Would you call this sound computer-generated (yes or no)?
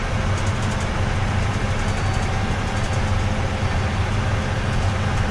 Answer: no